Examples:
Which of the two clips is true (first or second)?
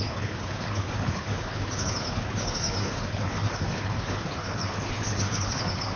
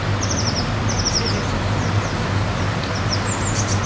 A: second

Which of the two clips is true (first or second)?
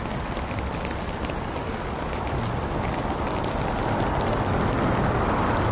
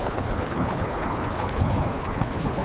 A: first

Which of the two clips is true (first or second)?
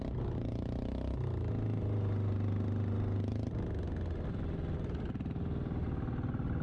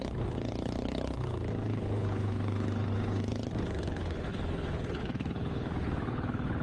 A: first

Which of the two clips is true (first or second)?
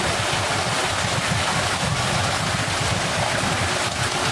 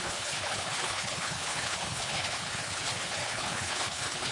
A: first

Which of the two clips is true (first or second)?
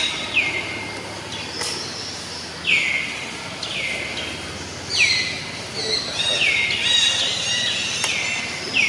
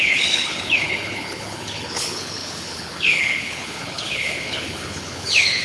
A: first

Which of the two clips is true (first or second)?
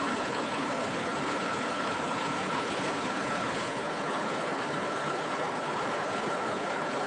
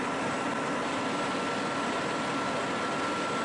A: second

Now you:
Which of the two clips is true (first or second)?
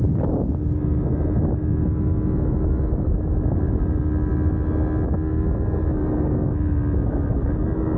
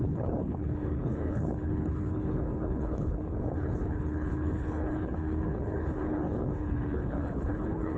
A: first